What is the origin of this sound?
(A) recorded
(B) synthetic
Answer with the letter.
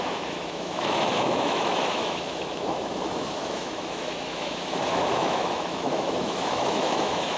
B